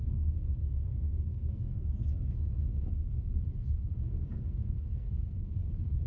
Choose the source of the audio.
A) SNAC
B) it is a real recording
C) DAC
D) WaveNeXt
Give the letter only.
A